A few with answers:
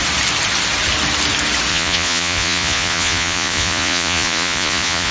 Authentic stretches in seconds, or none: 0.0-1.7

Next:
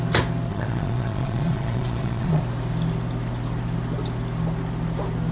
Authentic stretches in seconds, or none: 0.0-0.5; 2.4-5.3

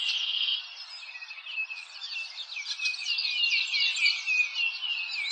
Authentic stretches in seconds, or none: 0.5-1.7; 2.1-5.3

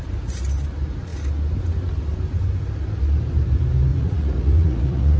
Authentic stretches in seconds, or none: 0.0-3.9

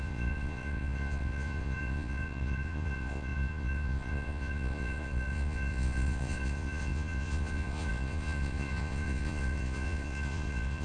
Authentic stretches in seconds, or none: none